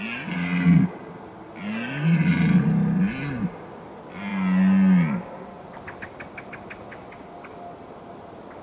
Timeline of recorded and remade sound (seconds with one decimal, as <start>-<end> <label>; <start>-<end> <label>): 0.0-8.6 recorded